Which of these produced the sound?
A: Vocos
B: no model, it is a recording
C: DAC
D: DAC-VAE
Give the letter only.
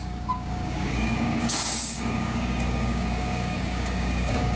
C